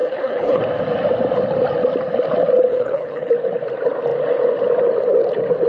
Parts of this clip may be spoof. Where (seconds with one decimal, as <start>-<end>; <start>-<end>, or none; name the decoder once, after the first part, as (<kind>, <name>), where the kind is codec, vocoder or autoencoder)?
0.0-0.6 (codec, HILCodec); 2.7-3.3